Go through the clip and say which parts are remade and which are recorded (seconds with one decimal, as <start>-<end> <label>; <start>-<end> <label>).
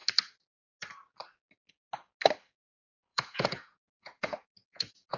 0.0-3.1 recorded; 3.1-5.2 remade